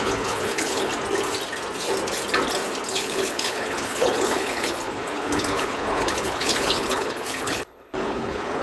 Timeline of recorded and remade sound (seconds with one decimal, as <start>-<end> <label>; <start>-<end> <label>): 0.0-0.9 remade; 0.9-2.9 recorded; 2.9-8.6 remade